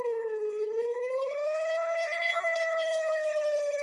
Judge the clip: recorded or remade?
remade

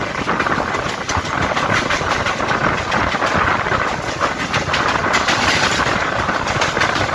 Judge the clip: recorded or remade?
recorded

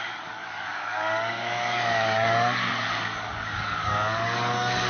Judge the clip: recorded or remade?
remade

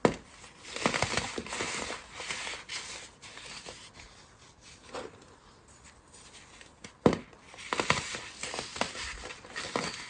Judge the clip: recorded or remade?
recorded